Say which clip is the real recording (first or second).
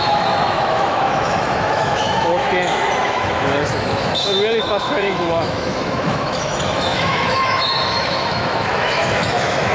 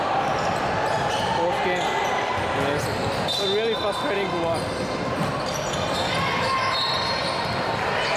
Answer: second